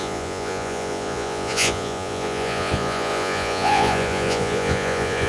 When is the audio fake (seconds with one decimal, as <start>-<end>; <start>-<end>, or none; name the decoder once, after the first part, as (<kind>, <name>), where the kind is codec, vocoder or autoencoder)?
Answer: 0.0-5.3 (vocoder, Vocos)